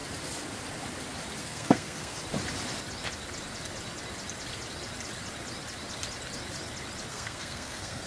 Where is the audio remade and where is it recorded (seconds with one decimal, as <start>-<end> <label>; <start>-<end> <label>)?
0.0-1.4 recorded; 1.4-2.2 remade; 2.2-7.1 recorded; 7.1-8.1 remade